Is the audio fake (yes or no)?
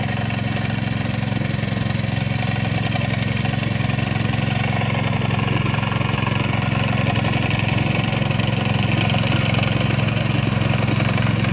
no